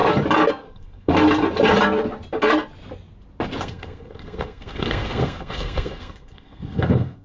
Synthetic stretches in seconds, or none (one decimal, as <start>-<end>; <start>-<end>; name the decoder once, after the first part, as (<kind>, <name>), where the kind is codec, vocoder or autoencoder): 0.5-1.1 (codec, SNAC); 3.6-7.2

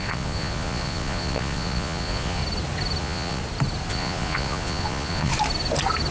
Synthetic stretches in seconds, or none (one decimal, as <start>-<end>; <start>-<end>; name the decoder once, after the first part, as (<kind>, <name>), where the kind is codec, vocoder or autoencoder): 0.0-2.4 (vocoder, Vocos); 3.0-3.4; 3.9-5.3